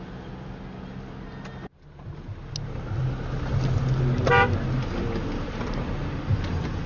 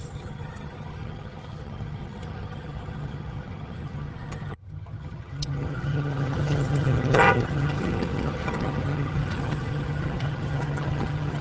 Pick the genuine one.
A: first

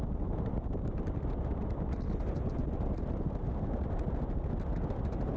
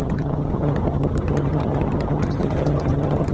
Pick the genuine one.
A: first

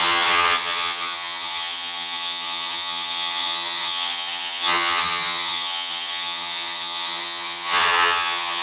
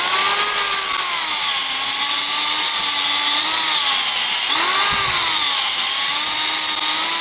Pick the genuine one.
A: second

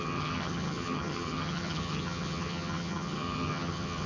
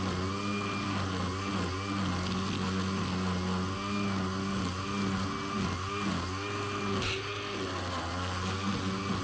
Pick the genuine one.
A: second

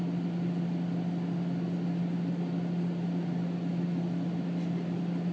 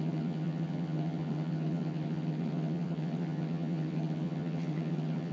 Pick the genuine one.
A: first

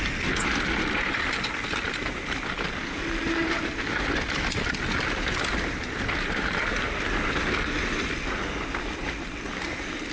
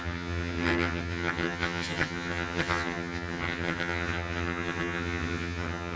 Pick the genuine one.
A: first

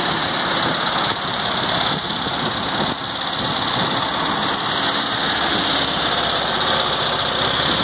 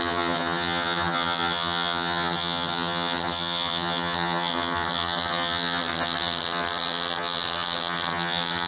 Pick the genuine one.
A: first